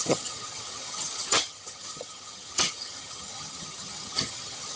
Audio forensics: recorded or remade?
remade